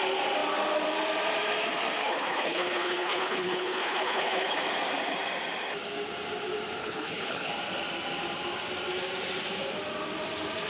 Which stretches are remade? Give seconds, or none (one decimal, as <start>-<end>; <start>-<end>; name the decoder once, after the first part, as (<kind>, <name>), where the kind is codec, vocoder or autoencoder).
2.0-4.6 (codec, HILCodec); 6.8-7.5